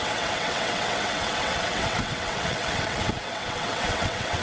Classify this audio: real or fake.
fake